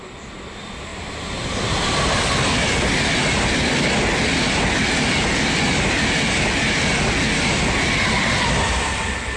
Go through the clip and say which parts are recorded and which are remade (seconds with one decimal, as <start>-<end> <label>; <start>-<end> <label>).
0.0-9.4 recorded

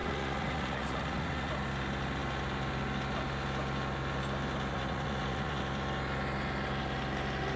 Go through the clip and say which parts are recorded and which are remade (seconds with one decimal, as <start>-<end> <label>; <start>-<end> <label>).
0.0-1.5 remade; 1.5-4.7 recorded; 4.7-5.6 remade; 5.6-7.6 recorded